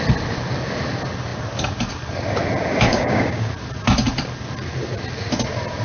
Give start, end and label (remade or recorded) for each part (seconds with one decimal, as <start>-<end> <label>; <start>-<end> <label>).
0.0-2.9 recorded; 2.9-3.5 remade; 3.5-5.8 recorded